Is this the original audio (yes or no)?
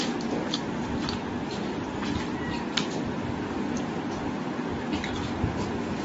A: yes